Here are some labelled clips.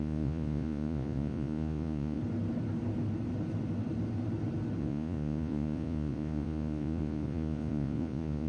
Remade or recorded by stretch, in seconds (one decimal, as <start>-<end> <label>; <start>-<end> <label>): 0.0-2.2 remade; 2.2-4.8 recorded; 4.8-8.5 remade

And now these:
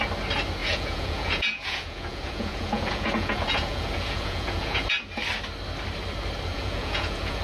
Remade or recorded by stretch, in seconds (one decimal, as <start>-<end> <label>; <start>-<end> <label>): 0.0-0.6 recorded; 0.6-5.0 remade; 5.0-6.5 recorded; 6.5-7.4 remade

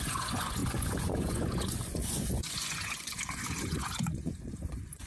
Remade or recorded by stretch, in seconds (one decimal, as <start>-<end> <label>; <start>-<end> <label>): 0.0-5.1 remade

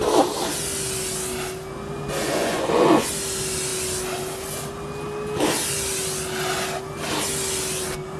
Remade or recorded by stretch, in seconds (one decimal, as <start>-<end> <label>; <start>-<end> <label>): 0.0-2.2 recorded; 2.2-3.1 remade; 3.1-8.2 recorded

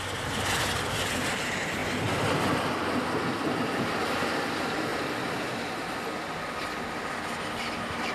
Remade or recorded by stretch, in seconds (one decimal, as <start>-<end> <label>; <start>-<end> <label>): 0.0-8.1 recorded

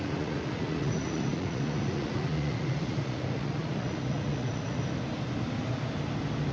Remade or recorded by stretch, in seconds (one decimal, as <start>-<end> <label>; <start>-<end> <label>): 0.0-4.8 remade; 4.8-6.5 recorded

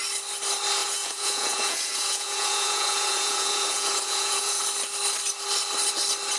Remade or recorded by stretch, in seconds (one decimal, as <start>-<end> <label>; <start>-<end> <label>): 0.0-0.8 recorded; 0.8-4.6 remade; 4.6-6.4 recorded